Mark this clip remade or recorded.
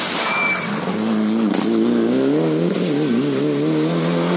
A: recorded